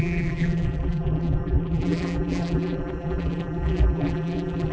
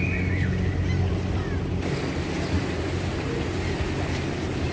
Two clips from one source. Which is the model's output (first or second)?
first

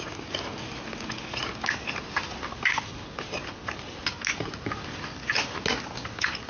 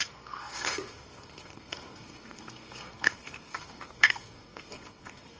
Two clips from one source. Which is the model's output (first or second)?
second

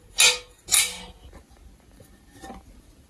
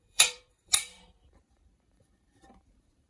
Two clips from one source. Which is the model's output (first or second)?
second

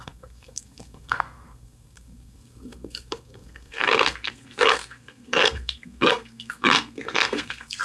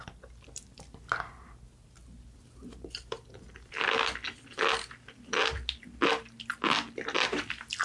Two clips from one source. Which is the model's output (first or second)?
first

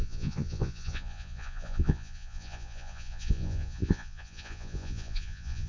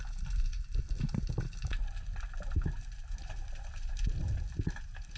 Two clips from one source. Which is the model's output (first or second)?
first